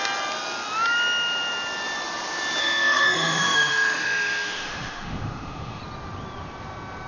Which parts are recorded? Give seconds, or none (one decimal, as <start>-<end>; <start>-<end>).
0.0-2.6; 5.8-7.1

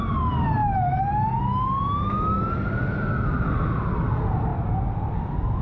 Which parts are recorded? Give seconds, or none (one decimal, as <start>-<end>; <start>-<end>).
0.0-5.6